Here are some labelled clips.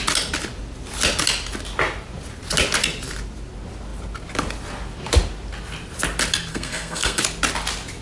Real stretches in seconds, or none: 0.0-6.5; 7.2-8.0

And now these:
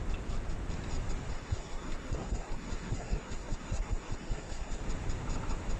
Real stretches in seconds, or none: 0.0-1.3; 4.8-5.8

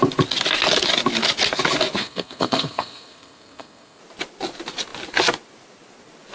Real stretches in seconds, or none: 0.0-2.0; 4.0-6.3

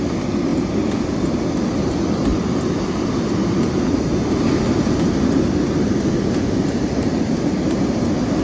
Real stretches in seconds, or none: 0.0-8.4

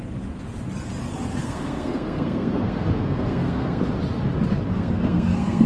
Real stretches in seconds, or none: 0.0-1.4; 3.8-4.7

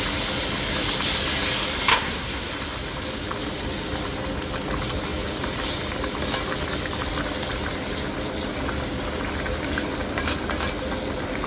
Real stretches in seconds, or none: 0.0-1.9; 2.5-11.5

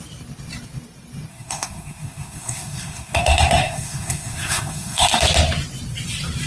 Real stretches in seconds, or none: 0.0-1.3; 5.2-6.5